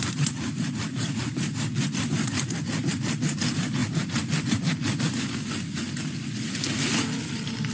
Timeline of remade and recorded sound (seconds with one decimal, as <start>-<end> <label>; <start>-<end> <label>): 0.0-7.7 remade